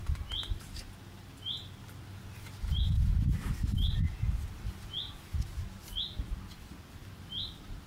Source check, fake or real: real